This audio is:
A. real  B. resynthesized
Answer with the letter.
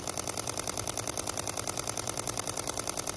A